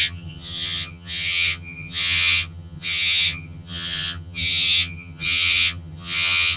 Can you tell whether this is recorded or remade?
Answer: remade